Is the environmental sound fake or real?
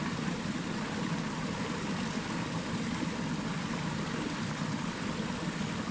real